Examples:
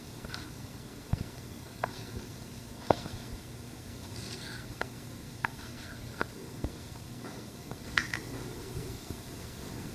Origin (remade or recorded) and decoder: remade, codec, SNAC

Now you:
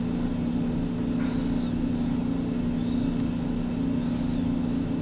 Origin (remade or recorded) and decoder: recorded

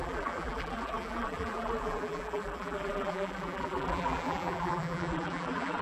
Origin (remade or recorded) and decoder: remade, vocoder, BigVGAN v2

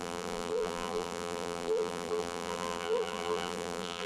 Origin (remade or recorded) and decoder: remade, vocoder, BigVGAN v2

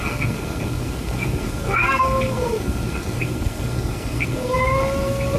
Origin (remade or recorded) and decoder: remade, codec, SNAC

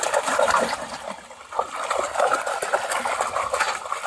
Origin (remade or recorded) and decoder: recorded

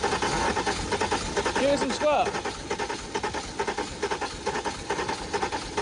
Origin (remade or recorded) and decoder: recorded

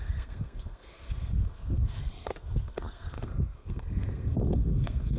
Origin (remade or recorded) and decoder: remade, codec, SNAC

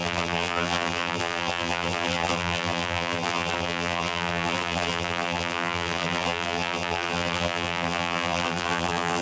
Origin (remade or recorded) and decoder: remade, vocoder, BigVGAN v2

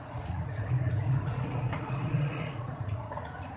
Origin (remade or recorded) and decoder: remade, vocoder, Vocos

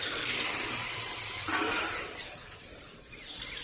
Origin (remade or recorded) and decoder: recorded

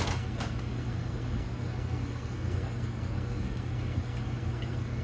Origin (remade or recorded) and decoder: remade, codec, SNAC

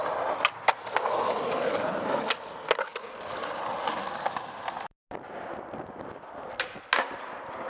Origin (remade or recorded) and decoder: recorded